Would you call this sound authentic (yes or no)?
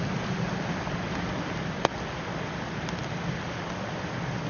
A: no